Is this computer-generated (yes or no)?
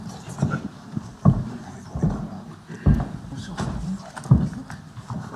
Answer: no